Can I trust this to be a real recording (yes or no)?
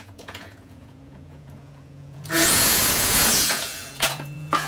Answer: no